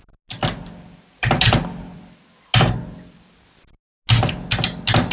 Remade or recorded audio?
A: recorded